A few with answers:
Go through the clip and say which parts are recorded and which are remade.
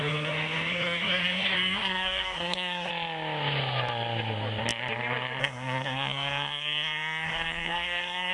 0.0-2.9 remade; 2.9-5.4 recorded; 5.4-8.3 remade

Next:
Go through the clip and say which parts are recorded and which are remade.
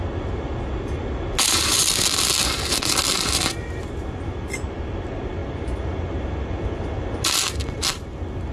0.0-8.5 recorded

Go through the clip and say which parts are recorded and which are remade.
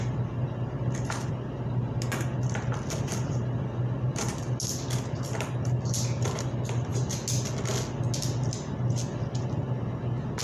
0.0-10.4 recorded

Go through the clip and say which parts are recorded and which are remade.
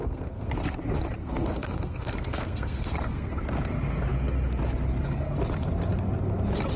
0.0-0.5 remade; 0.5-1.2 recorded; 1.2-3.4 remade; 3.4-6.8 recorded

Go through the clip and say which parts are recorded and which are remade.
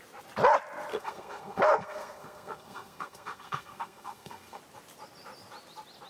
0.0-0.9 recorded; 0.9-4.6 remade; 4.6-6.1 recorded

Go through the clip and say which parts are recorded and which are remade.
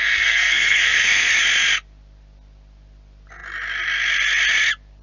0.0-1.3 remade; 1.3-5.0 recorded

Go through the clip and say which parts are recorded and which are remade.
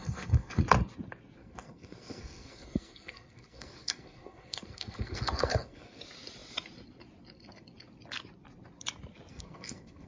0.0-0.6 remade; 0.6-1.4 recorded; 1.4-6.0 remade; 6.0-9.3 recorded; 9.3-10.1 remade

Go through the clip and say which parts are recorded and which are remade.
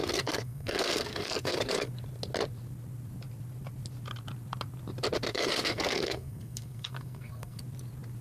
0.0-1.9 remade; 1.9-5.3 recorded; 5.3-7.6 remade; 7.6-8.2 recorded